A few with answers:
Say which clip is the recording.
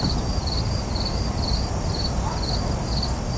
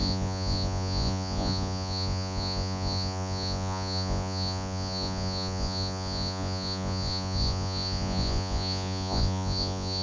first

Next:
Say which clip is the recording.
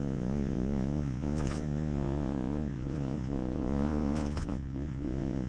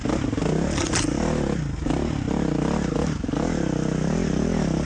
second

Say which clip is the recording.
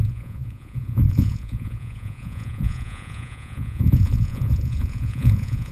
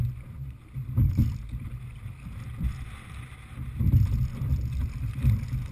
second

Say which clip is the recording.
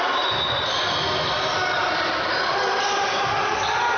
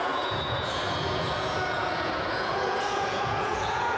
first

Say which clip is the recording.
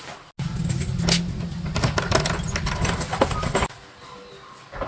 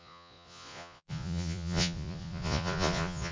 first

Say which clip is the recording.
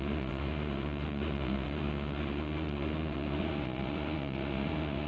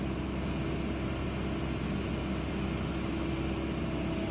second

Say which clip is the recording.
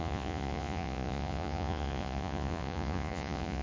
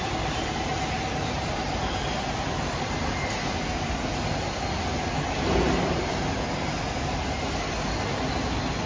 second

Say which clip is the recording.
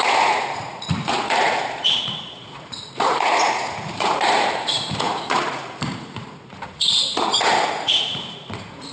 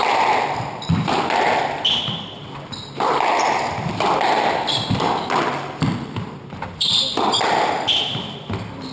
second